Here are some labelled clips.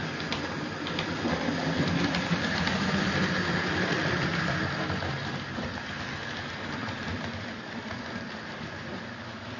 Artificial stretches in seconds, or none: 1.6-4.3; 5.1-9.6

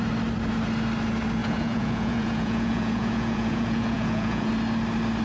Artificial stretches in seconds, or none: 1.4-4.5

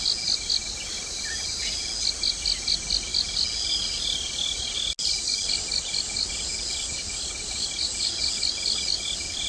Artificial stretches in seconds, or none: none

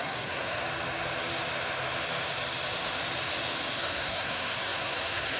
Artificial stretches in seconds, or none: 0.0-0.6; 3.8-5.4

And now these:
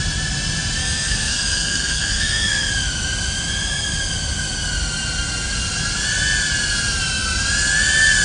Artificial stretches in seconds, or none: 0.8-2.7

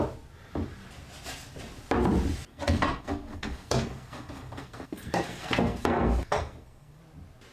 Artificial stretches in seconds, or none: 2.5-7.0

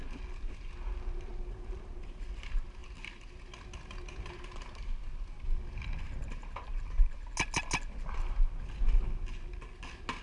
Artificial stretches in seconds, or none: none